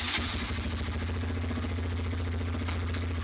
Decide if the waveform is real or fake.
real